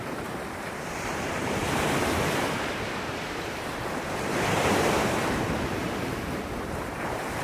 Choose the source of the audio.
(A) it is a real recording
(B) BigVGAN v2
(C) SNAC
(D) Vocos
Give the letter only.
B